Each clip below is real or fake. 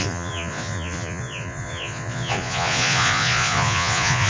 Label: fake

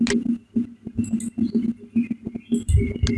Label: real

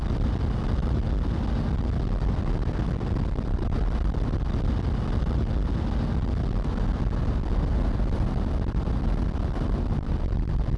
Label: real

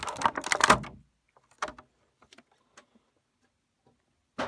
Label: real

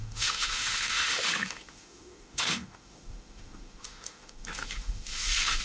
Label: fake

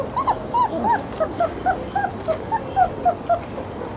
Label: real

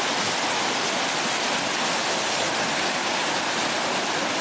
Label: real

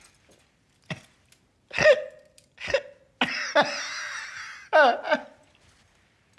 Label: real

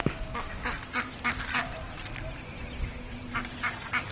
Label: real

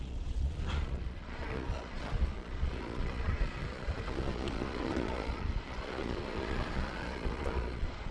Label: fake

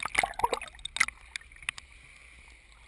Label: real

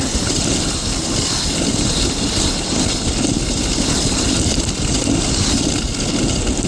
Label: real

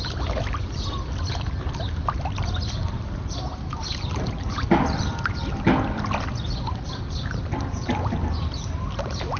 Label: fake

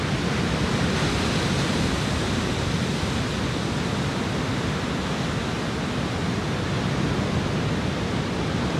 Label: real